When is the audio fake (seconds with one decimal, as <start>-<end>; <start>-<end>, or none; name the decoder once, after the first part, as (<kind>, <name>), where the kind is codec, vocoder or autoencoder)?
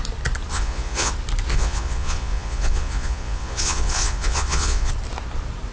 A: 0.5-1.1 (vocoder, Vocos); 1.5-4.9